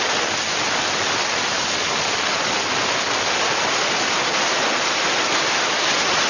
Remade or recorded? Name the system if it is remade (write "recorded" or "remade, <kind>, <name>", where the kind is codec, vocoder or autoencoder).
recorded